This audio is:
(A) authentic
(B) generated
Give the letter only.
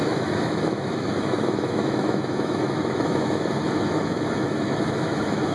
B